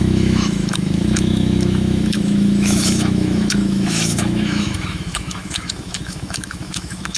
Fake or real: fake